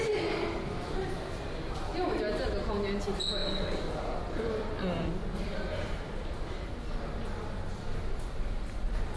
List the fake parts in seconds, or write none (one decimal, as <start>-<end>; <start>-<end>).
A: 1.9-2.5; 3.4-6.7